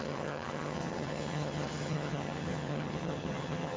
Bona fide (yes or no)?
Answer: no